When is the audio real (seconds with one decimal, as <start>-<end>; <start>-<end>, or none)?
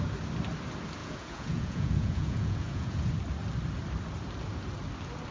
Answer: 0.0-1.0; 3.1-5.3